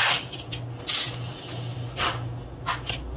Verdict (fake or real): real